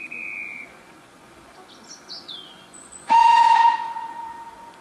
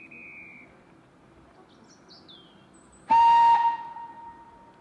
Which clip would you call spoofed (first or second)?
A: first